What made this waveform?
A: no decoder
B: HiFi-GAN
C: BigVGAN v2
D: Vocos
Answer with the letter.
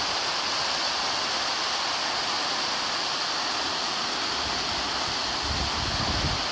A